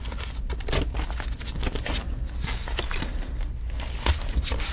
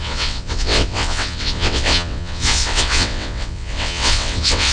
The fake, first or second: second